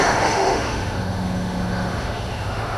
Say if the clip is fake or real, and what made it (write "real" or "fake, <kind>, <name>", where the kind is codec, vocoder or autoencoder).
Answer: fake, autoencoder, DAC-VAE